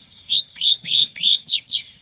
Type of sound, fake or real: fake